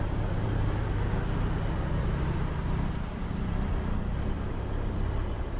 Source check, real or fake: fake